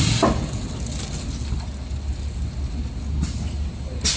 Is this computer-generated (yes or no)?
no